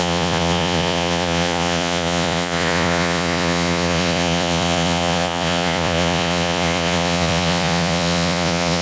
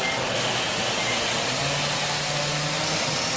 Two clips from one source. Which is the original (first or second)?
second